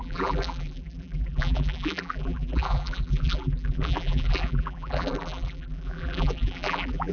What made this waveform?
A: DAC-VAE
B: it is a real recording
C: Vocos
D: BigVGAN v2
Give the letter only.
D